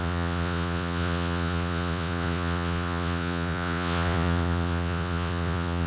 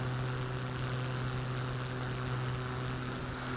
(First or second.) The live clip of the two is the second